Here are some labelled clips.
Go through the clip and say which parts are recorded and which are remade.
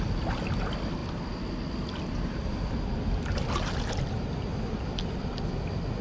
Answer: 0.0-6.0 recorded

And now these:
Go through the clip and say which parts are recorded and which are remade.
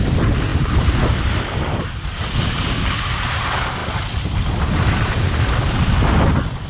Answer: 0.0-0.5 recorded; 0.5-2.2 remade; 2.2-3.8 recorded; 3.8-5.1 remade; 5.1-6.7 recorded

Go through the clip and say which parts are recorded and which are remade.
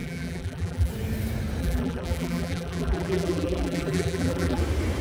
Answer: 0.0-0.9 remade; 0.9-1.6 recorded; 1.6-4.6 remade; 4.6-5.0 recorded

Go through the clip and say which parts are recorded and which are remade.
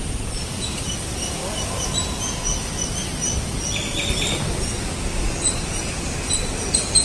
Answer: 0.0-1.4 remade; 1.4-5.5 recorded; 5.5-7.0 remade